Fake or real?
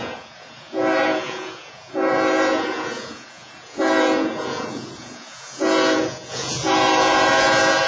fake